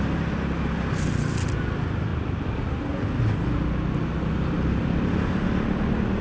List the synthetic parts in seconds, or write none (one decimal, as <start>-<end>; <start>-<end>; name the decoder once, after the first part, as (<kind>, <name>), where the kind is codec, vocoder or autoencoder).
none